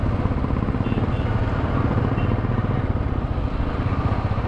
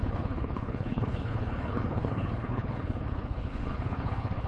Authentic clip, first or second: first